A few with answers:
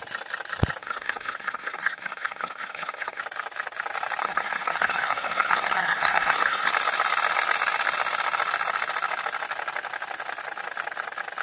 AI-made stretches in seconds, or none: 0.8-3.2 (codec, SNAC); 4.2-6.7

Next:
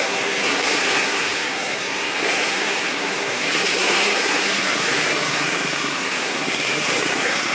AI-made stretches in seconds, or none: 0.0-7.5 (codec, SNAC)

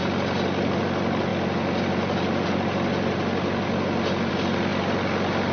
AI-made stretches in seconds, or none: none

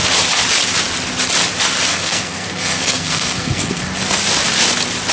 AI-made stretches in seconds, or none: 1.9-3.8 (codec, SNAC)

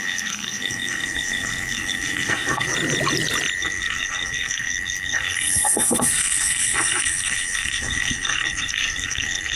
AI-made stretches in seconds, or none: 0.0-2.7 (codec, SNAC); 3.6-9.6